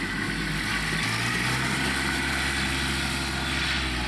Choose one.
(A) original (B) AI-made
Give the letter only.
A